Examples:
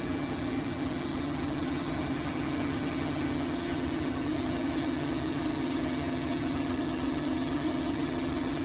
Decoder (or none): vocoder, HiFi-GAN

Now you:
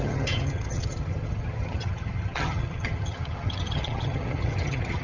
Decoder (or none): vocoder, HiFi-GAN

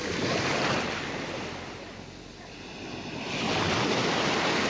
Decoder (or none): none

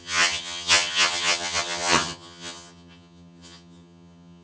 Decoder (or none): vocoder, HiFi-GAN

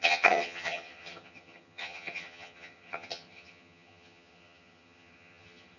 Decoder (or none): vocoder, HiFi-GAN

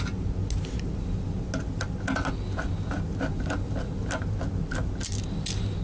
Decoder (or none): none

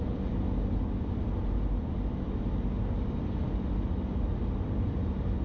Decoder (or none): none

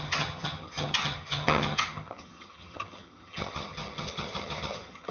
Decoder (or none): vocoder, HiFi-GAN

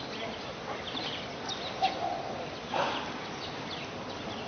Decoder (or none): none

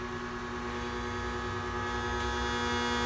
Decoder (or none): none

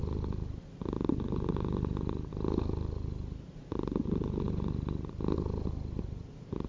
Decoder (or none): none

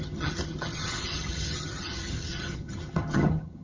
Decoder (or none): vocoder, HiFi-GAN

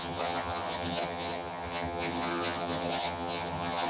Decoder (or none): vocoder, HiFi-GAN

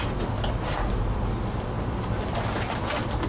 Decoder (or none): none